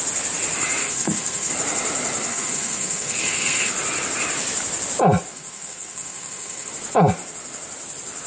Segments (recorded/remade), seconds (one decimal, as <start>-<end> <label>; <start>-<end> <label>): 0.0-0.8 recorded; 0.8-1.5 remade; 1.5-2.3 recorded; 2.3-3.7 remade; 3.7-5.3 recorded; 5.3-6.7 remade; 6.7-8.3 recorded